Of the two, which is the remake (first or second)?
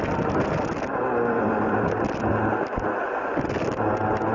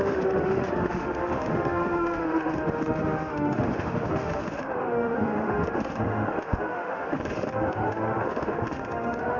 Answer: second